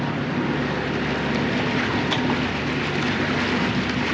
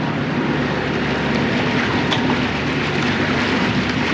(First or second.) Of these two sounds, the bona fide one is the first